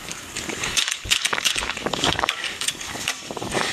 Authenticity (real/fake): fake